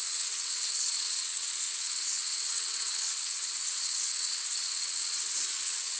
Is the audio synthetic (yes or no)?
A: yes